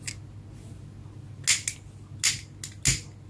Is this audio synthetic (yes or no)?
no